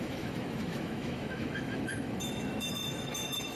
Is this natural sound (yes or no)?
no